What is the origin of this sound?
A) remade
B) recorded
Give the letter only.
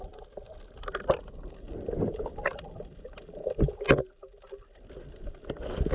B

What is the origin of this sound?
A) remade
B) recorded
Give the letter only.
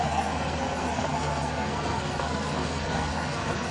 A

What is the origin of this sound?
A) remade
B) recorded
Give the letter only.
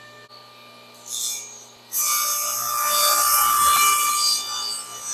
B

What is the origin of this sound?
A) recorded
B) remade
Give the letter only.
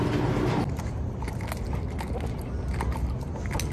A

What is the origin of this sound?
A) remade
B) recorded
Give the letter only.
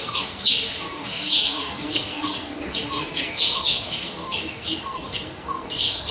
A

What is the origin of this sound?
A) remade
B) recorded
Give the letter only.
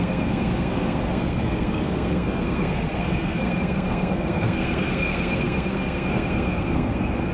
A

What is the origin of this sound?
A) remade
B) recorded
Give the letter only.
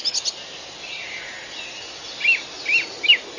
B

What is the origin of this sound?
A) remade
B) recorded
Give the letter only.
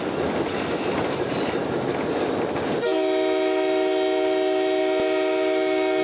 B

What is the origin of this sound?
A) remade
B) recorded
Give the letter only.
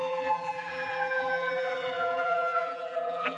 A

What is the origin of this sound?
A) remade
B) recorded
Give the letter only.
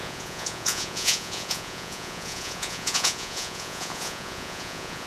A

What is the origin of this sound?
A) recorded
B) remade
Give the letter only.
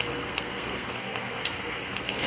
B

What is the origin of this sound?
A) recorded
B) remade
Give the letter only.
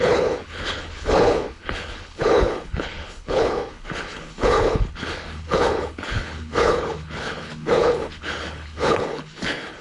B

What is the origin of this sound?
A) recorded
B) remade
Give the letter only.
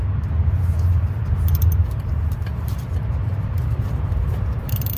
B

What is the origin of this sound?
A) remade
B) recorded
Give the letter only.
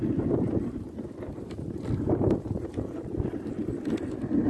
B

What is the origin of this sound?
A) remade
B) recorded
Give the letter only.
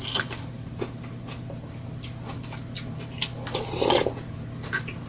B